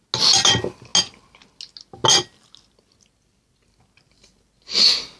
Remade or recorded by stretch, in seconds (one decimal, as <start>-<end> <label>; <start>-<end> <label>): 0.0-5.2 recorded